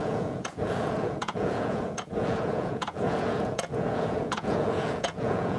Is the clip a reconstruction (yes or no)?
yes